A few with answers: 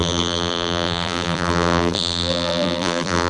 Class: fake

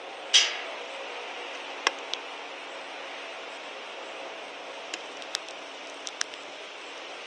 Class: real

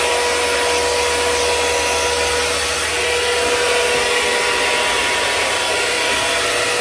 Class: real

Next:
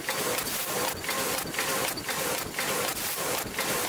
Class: real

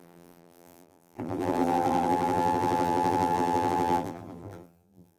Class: fake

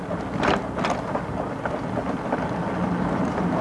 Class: real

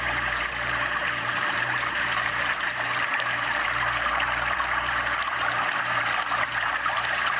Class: fake